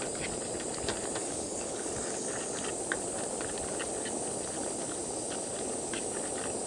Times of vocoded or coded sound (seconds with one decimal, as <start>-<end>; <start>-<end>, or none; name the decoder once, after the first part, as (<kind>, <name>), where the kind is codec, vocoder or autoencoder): 1.2-2.3 (codec, DAC)